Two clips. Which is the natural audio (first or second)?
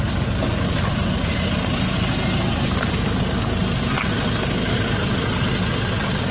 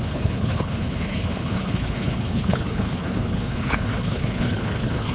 first